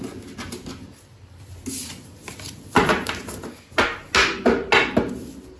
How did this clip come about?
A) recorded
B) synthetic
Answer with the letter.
A